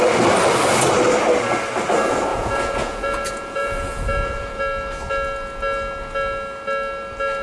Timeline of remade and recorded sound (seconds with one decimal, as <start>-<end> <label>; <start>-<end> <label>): 0.0-2.3 recorded; 2.3-4.6 remade; 4.6-7.4 recorded